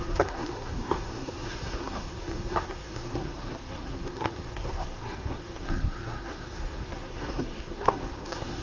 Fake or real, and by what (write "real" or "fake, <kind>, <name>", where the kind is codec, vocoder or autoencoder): fake, codec, SNAC